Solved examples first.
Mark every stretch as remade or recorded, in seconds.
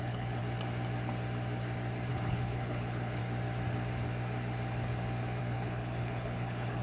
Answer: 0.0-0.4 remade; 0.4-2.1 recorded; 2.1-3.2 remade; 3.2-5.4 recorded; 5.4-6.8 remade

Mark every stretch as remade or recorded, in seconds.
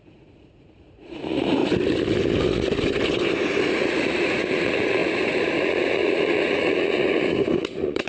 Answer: 0.0-1.6 remade; 1.6-3.7 recorded; 3.7-8.1 remade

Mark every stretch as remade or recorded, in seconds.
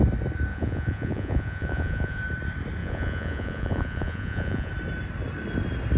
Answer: 0.0-0.5 recorded; 0.5-2.2 remade; 2.2-2.8 recorded; 2.8-4.7 remade; 4.7-6.0 recorded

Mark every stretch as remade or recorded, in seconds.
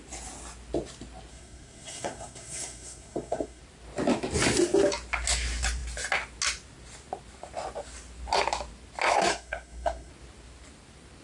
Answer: 0.0-1.3 recorded; 1.3-3.6 remade; 3.6-9.3 recorded; 9.3-10.1 remade; 10.1-11.2 recorded